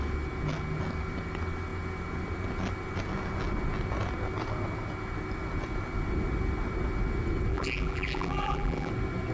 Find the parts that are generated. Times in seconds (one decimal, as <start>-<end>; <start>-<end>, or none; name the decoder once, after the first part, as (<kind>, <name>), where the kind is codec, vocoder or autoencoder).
7.5-8.9 (vocoder, BigVGAN v2)